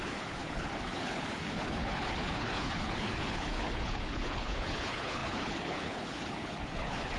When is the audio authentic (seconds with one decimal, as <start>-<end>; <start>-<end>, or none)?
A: none